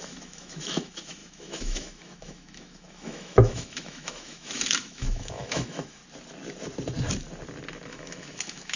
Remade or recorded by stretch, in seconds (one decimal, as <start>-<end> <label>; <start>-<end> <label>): 0.0-6.0 remade; 6.0-7.9 recorded; 7.9-8.8 remade